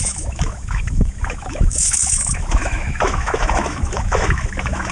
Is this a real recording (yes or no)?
no